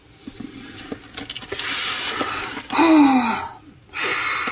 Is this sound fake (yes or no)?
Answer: no